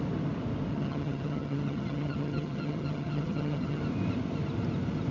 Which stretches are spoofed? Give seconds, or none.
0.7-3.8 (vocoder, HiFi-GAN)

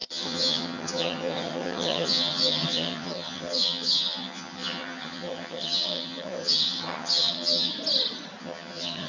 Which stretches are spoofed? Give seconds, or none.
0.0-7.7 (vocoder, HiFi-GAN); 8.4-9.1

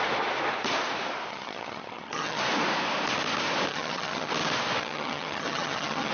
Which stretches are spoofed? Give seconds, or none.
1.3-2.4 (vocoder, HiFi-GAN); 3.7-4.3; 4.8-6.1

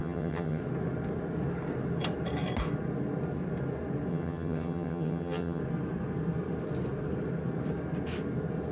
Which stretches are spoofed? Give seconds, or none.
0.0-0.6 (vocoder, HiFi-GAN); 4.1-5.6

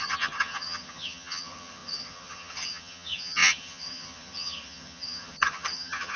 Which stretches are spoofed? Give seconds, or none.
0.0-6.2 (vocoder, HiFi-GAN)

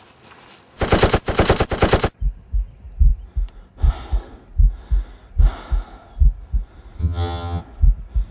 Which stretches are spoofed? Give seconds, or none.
7.0-7.6 (vocoder, HiFi-GAN)